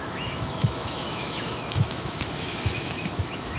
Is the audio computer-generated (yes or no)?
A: yes